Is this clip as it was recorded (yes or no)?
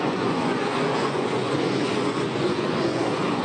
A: no